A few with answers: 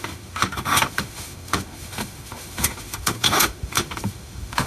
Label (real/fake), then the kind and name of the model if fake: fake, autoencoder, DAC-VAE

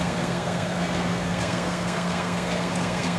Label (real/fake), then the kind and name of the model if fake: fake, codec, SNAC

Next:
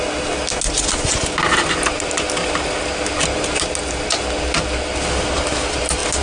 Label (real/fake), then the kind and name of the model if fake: real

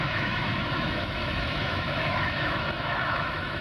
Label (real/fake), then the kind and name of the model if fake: fake, autoencoder, DAC-VAE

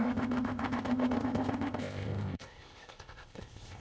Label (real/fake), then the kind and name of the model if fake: fake, codec, ZipCodec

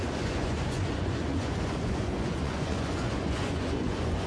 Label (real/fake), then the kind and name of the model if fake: fake, vocoder, Vocos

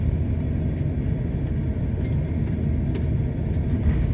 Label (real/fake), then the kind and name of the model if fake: real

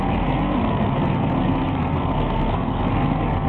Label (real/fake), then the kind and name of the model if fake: fake, codec, SNAC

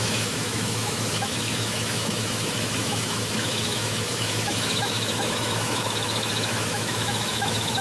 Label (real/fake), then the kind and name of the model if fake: fake, autoencoder, DAC-VAE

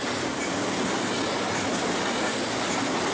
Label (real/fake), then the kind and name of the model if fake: real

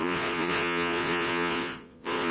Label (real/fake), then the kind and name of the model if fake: fake, vocoder, Vocos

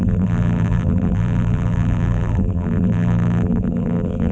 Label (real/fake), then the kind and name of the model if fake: fake, vocoder, BigVGAN v2